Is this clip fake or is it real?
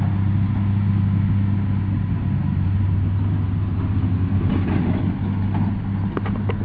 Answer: real